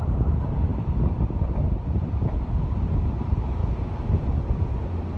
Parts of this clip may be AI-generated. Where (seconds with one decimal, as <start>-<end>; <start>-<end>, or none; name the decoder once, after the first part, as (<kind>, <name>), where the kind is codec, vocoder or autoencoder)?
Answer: none